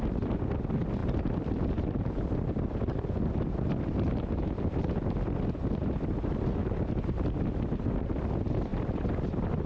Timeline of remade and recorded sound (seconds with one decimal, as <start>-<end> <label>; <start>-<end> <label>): 0.0-1.0 recorded; 1.0-1.7 remade; 1.7-8.7 recorded; 8.7-9.7 remade